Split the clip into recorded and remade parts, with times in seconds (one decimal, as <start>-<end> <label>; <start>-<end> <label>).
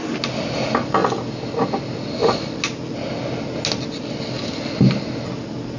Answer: 0.0-5.8 recorded